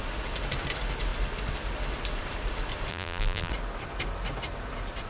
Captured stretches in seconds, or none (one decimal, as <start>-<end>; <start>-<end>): 0.0-2.9; 3.5-5.1